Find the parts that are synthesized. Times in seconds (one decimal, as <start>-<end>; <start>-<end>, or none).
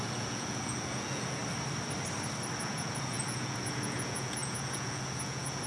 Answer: 0.0-1.4; 2.6-5.7